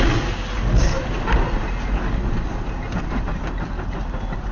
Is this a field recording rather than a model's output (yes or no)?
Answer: yes